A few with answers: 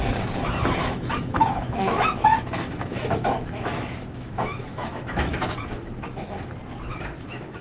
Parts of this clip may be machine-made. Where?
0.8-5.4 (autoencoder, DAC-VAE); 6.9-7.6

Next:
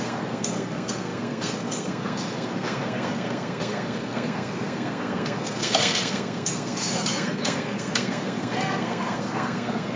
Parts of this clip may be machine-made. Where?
0.0-10.0 (codec, SNAC)

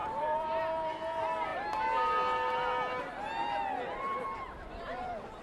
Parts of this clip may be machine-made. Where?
0.0-0.6 (vocoder, BigVGAN v2)

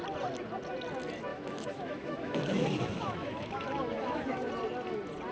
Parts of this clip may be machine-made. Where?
1.3-4.5 (autoencoder, DAC-VAE)